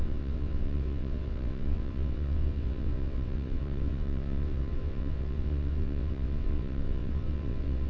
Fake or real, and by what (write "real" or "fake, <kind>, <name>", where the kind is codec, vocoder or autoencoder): fake, vocoder, WaveNeXt